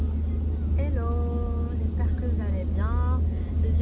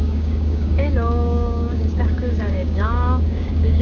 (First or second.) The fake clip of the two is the second